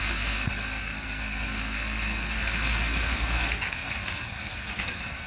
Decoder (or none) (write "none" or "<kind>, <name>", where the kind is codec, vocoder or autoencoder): codec, SNAC